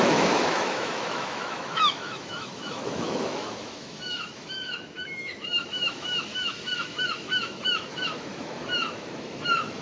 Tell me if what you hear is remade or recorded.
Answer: remade